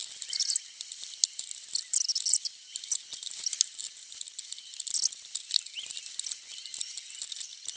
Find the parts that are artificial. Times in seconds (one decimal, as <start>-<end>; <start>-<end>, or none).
none